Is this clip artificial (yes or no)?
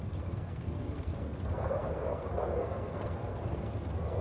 yes